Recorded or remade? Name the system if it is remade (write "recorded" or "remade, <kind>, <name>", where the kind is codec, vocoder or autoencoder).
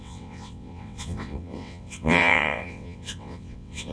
remade, vocoder, WaveNeXt